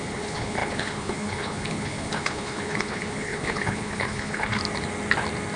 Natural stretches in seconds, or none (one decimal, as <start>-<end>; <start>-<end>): 4.6-5.6